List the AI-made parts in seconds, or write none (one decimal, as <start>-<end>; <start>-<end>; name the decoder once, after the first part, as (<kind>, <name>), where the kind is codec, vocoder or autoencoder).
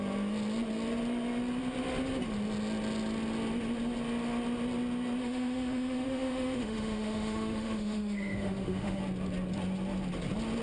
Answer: 5.2-9.0 (autoencoder, DAC-VAE)